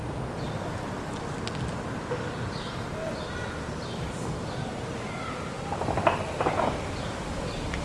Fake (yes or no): no